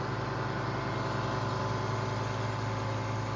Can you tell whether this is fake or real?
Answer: real